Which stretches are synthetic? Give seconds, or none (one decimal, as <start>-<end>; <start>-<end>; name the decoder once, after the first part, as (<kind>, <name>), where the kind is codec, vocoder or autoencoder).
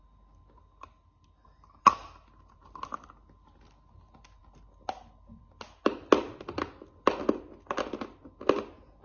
none